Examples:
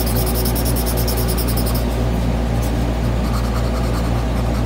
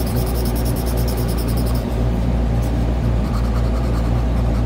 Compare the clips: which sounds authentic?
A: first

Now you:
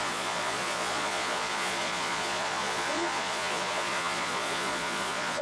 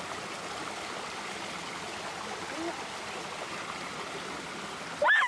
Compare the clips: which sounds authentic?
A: second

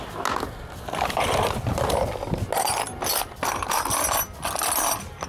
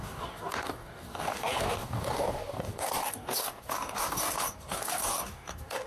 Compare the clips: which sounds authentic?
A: first